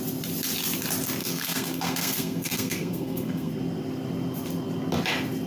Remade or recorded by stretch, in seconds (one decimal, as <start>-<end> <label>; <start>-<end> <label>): 0.0-1.2 recorded; 1.2-3.5 remade; 3.5-5.5 recorded